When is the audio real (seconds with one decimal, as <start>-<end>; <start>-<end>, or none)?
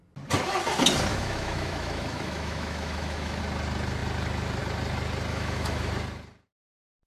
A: 0.0-1.1; 3.4-5.3; 5.9-7.1